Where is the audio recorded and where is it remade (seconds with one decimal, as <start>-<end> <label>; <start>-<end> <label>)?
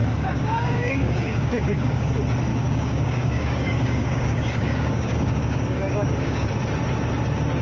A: 0.0-2.1 remade; 2.1-2.5 recorded; 2.5-6.5 remade; 6.5-7.6 recorded